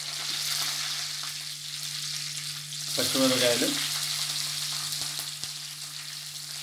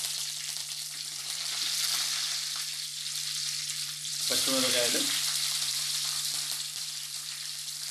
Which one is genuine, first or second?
first